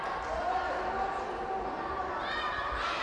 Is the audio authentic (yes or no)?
yes